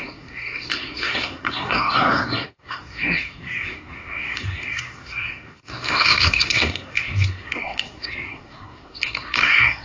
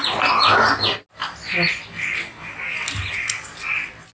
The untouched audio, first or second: second